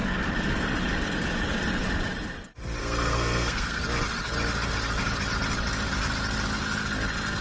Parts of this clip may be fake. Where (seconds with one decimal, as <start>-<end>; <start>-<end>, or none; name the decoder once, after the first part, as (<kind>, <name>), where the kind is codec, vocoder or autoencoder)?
2.8-3.8 (codec, SNAC)